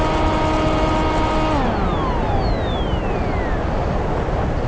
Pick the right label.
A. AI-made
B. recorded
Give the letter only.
B